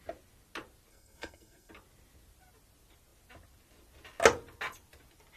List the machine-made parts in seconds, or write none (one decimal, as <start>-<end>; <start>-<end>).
0.9-1.7